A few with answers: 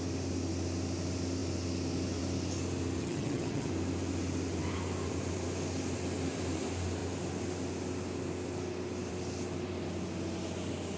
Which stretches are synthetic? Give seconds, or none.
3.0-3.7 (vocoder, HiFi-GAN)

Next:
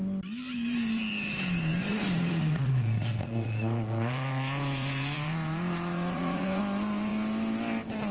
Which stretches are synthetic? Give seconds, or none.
1.9-6.6 (vocoder, Vocos)

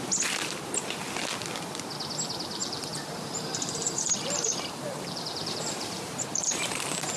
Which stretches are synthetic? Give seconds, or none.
2.6-6.8 (vocoder, BigVGAN v2)

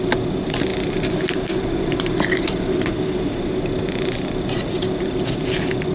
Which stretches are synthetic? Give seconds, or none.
none